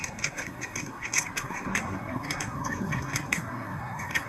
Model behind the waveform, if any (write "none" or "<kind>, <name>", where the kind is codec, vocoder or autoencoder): codec, SNAC